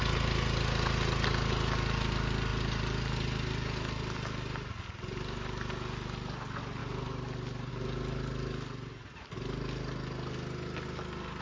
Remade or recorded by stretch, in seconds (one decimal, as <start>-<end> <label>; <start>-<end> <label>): 0.0-11.4 recorded